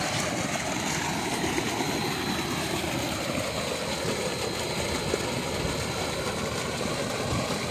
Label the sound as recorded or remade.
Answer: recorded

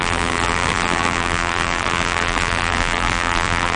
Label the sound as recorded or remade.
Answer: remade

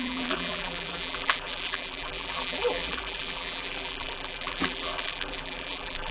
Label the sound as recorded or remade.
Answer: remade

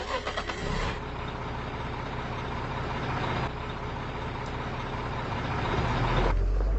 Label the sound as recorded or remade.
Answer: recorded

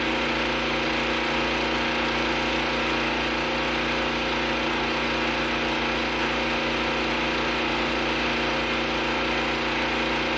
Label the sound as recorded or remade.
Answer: recorded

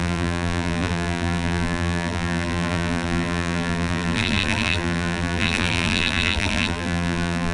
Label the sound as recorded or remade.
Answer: remade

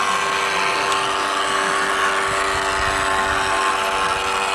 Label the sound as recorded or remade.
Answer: recorded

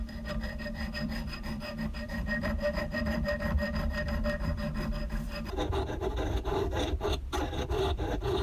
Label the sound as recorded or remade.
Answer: remade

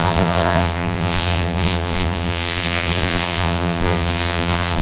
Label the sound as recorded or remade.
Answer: remade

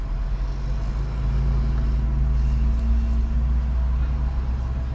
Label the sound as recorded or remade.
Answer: recorded